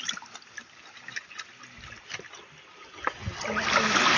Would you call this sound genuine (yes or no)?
yes